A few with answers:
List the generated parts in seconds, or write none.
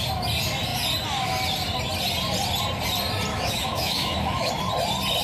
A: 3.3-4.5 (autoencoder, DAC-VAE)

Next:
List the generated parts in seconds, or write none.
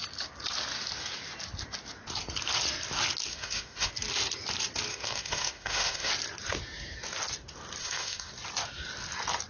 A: 3.3-3.9 (autoencoder, DAC-VAE); 4.9-6.1; 7.8-8.3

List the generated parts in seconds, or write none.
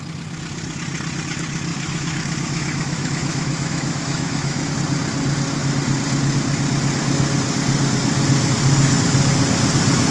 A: 1.7-4.7 (autoencoder, DAC-VAE)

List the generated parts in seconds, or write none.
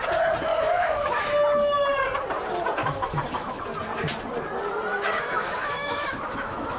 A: 0.5-1.3 (autoencoder, DAC-VAE); 2.8-3.6; 4.9-6.8